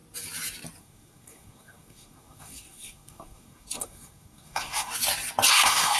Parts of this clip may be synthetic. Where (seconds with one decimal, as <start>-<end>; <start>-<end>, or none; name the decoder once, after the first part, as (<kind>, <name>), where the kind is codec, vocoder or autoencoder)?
0.8-4.9 (codec, SNAC); 5.5-6.0